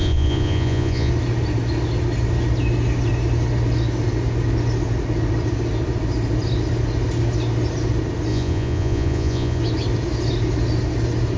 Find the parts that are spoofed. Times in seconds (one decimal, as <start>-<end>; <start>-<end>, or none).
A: 0.0-1.1; 8.3-9.6